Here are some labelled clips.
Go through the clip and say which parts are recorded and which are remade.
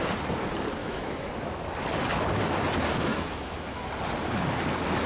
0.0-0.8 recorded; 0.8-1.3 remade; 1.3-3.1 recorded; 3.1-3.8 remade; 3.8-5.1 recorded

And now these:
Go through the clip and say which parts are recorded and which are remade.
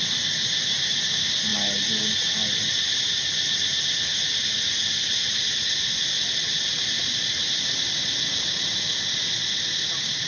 0.0-10.3 recorded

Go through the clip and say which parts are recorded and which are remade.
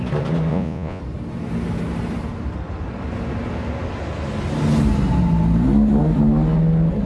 0.0-0.5 recorded; 0.5-1.0 remade; 1.0-7.1 recorded